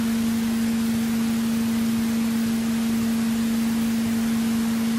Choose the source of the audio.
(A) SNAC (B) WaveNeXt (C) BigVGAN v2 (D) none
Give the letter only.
D